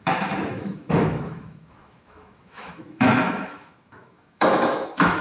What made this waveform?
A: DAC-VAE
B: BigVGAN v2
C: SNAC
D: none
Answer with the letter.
A